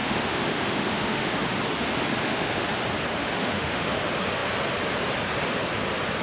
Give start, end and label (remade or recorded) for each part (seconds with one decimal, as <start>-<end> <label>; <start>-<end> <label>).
0.0-1.6 remade; 1.6-2.2 recorded; 2.2-2.7 remade; 2.7-3.2 recorded; 3.2-4.0 remade; 4.0-6.2 recorded